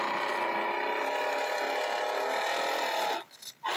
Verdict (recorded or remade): recorded